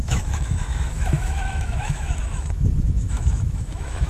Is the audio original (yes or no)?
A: no